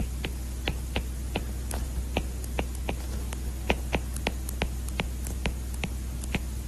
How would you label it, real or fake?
real